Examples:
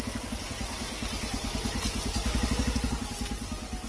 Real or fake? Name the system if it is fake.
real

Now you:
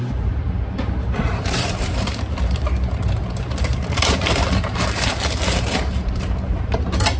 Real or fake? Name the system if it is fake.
fake, vocoder, BigVGAN v2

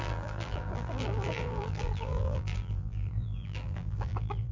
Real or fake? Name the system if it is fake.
fake, vocoder, BigVGAN v2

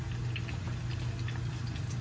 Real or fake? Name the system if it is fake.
real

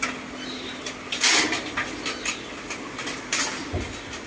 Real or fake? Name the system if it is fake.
real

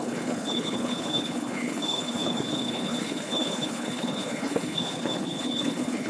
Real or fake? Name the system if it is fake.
fake, codec, HILCodec